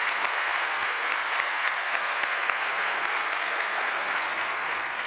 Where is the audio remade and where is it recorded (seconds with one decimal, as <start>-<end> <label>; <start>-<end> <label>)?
0.0-5.1 remade